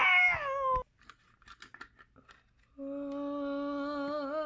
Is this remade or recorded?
recorded